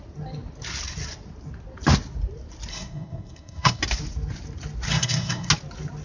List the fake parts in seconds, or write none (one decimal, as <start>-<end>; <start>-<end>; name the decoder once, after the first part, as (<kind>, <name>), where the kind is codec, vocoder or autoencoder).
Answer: 2.7-3.8 (codec, SNAC); 4.9-5.5